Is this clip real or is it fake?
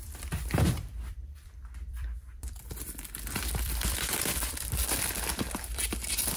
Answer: fake